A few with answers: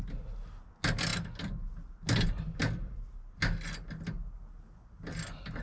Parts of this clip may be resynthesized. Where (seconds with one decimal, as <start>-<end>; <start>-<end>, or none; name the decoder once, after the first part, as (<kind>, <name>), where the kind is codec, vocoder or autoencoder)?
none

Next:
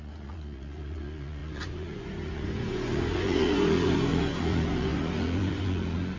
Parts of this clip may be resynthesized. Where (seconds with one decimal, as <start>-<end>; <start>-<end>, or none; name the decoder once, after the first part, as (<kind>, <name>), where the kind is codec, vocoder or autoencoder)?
0.0-6.2 (vocoder, Vocos)

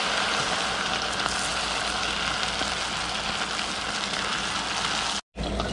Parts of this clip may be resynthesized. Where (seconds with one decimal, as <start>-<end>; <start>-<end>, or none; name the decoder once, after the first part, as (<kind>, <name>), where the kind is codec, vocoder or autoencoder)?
none

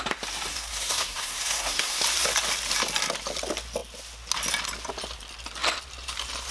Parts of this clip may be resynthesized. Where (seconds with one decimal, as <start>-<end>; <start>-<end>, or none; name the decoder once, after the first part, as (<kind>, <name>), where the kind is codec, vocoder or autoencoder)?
0.5-2.0 (codec, SNAC)

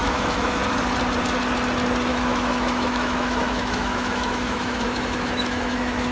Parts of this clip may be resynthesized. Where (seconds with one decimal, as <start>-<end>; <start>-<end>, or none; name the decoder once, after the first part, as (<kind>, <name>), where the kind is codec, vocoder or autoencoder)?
0.0-0.6 (autoencoder, DAC-VAE); 2.1-6.1

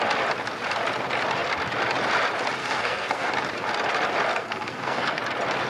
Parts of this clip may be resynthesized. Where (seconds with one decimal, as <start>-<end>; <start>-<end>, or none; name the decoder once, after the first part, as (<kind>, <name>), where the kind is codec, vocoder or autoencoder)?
2.6-3.3 (codec, SNAC); 4.3-5.2